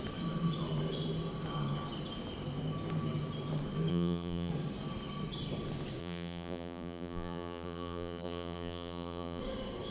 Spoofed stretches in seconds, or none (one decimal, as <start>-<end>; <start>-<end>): 3.9-4.5; 6.0-9.4